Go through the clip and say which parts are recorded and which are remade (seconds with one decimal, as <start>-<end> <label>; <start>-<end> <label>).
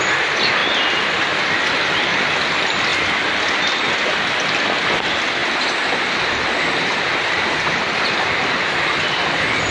0.0-9.7 recorded